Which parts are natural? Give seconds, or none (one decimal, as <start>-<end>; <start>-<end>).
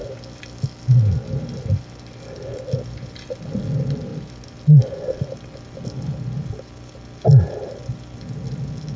0.0-9.0